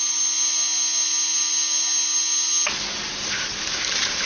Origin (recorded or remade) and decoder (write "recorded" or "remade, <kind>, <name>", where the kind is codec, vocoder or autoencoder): recorded